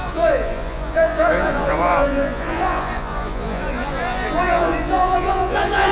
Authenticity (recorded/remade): remade